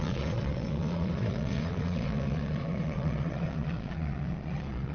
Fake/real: fake